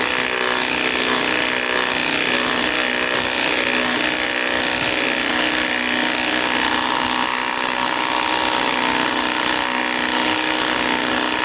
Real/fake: real